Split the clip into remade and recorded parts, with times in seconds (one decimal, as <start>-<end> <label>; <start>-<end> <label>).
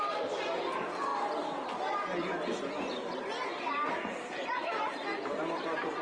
0.0-6.0 recorded